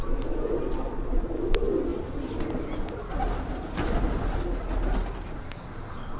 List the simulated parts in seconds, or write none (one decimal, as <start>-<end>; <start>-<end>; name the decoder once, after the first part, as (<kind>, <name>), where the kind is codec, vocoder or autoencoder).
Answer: none